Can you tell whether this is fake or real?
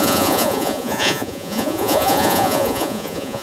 fake